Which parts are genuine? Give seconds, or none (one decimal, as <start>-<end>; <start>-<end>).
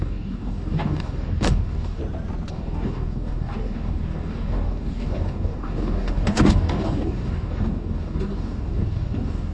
2.0-2.5